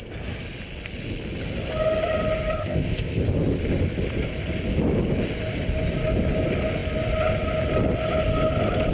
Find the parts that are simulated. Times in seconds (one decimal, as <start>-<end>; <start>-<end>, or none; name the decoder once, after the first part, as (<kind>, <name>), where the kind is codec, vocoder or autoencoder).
2.6-3.2 (codec, ZipCodec)